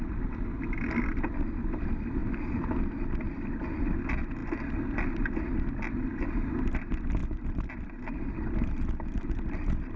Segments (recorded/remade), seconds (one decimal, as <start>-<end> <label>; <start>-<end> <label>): 0.0-7.2 recorded; 7.2-8.0 remade; 8.0-10.0 recorded